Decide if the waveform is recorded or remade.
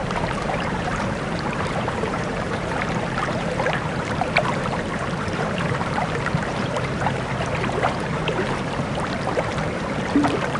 remade